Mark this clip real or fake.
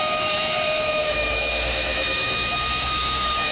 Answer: fake